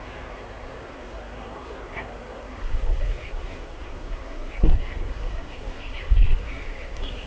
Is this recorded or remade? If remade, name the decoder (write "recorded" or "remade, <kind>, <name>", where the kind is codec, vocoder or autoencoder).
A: remade, codec, SNAC